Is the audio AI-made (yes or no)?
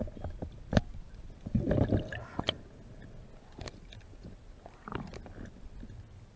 no